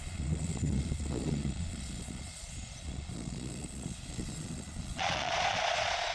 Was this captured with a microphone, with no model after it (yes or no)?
no